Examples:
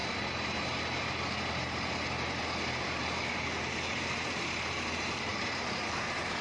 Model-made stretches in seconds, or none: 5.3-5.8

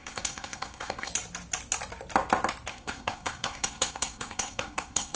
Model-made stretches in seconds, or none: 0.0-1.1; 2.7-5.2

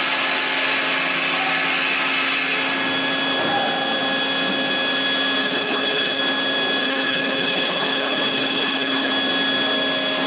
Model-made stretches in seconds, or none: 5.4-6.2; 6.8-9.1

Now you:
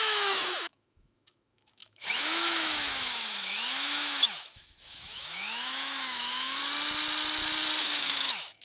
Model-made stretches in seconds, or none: 0.0-6.6; 7.8-8.6

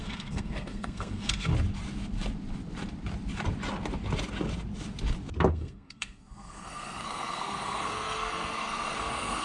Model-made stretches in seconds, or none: 0.0-1.5; 5.5-9.4